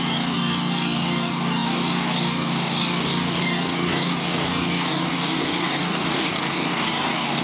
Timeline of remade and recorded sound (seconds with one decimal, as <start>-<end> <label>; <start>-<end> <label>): 0.0-7.4 remade